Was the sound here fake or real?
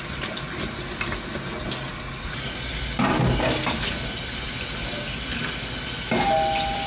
real